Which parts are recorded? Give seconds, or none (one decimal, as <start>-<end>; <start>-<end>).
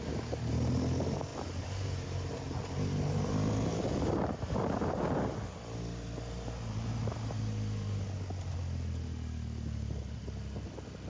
0.0-11.1